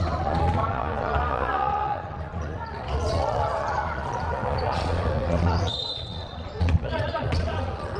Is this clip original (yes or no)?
no